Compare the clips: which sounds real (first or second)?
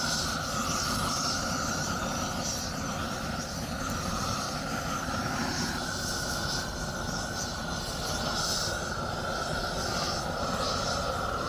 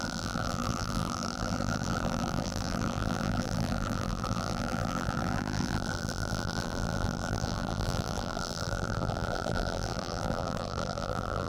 first